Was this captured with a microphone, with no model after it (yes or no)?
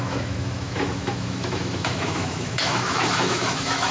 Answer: no